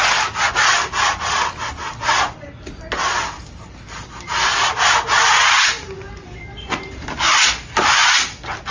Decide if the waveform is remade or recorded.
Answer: recorded